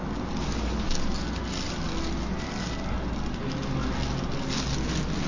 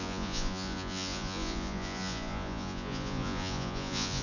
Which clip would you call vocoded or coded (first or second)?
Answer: second